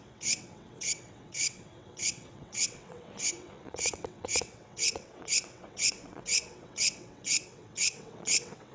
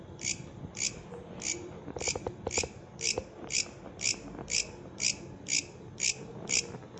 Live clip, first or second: second